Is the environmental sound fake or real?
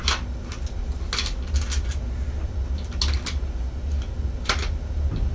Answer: real